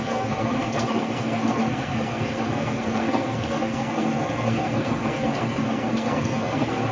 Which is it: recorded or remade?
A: remade